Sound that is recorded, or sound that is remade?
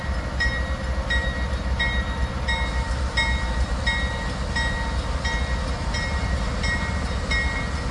recorded